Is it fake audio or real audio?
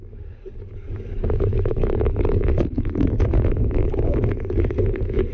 fake